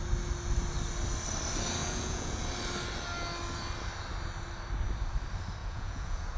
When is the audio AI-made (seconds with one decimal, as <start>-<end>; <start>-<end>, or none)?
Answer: 1.8-2.4; 5.6-6.4